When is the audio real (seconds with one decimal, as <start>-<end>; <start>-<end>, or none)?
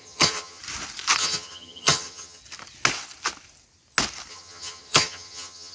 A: 0.6-1.2; 2.4-4.3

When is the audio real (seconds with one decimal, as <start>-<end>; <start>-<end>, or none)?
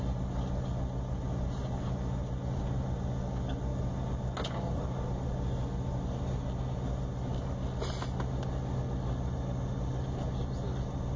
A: 0.0-11.2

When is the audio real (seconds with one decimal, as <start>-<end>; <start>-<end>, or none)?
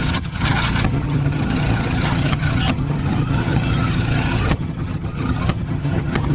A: none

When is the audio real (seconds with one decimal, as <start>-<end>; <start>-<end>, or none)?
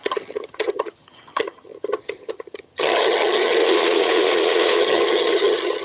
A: 3.6-4.8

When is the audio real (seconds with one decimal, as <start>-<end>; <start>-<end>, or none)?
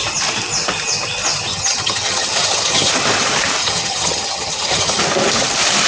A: 0.0-1.5; 2.9-3.6; 5.0-5.9